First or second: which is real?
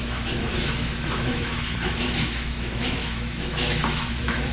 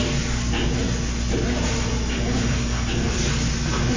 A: second